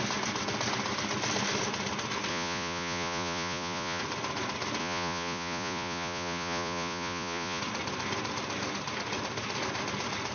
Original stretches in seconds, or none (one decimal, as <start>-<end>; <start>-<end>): 0.0-2.3; 4.0-4.8; 7.6-10.3